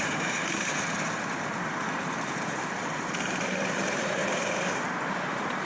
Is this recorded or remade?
remade